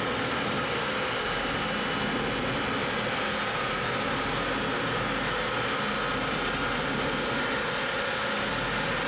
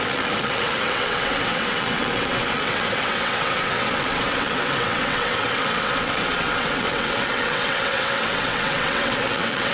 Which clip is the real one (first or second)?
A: first